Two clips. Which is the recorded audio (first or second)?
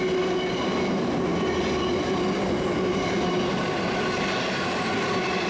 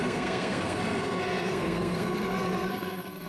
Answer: first